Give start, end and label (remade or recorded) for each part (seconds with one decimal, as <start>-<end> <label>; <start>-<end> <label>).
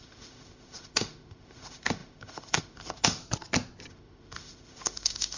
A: 0.0-3.2 remade; 3.2-3.9 recorded; 3.9-5.4 remade